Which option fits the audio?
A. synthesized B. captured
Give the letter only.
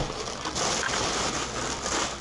B